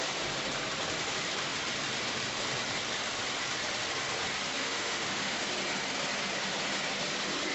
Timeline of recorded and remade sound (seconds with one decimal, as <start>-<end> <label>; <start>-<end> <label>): 0.0-4.6 recorded; 4.6-5.5 remade; 5.5-7.5 recorded